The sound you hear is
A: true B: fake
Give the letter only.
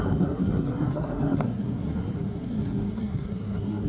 B